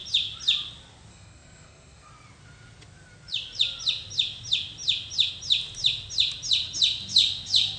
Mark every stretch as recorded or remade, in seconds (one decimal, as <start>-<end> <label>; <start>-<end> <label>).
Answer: 0.0-1.1 recorded; 1.1-2.1 remade; 2.1-7.8 recorded

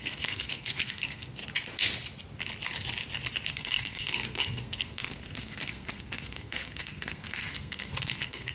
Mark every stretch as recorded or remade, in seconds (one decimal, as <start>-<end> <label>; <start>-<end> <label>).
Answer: 0.0-1.4 remade; 1.4-3.5 recorded; 3.5-8.5 remade

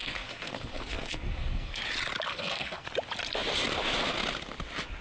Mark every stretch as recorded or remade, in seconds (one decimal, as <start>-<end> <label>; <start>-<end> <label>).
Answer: 0.0-1.8 remade; 1.8-2.3 recorded; 2.3-2.9 remade; 2.9-5.0 recorded

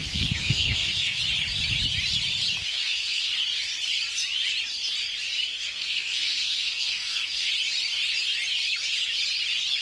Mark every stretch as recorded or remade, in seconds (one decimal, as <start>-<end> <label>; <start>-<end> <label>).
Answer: 0.0-1.2 remade; 1.2-2.6 recorded; 2.6-3.3 remade; 3.3-5.5 recorded; 5.5-7.5 remade; 7.5-9.8 recorded

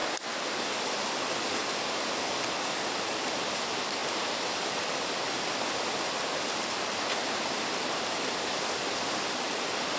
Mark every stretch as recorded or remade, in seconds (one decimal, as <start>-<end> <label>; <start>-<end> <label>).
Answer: 0.0-10.0 recorded

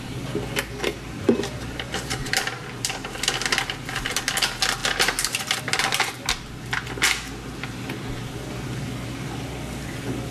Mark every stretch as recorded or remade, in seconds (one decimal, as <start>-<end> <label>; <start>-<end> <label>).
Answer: 0.0-10.3 recorded

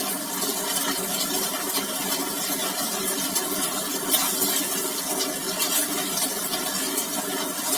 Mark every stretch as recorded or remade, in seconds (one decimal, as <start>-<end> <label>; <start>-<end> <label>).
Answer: 0.0-5.4 recorded; 5.4-6.4 remade; 6.4-7.8 recorded

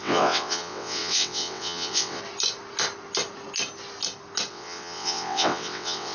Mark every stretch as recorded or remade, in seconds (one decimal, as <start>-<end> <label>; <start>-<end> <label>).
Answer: 0.0-2.2 remade; 2.2-4.5 recorded; 4.5-6.1 remade